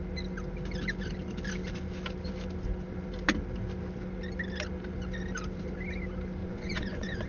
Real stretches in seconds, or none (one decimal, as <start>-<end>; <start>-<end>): 0.0-6.4